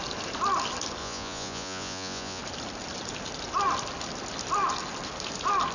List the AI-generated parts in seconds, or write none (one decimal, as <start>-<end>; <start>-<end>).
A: 1.0-2.4